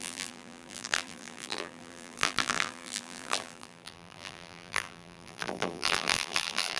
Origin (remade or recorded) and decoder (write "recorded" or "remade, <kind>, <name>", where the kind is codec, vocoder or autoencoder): remade, vocoder, BigVGAN v2